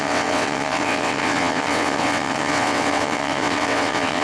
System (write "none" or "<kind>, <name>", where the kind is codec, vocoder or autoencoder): vocoder, WaveNeXt